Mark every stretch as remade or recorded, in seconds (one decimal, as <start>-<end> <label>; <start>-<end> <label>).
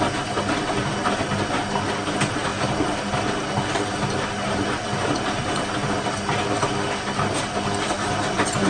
0.0-8.7 recorded